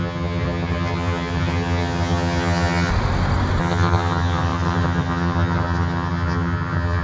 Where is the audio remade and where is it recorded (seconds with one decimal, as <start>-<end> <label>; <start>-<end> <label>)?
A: 0.0-2.9 remade; 2.9-3.6 recorded; 3.6-7.0 remade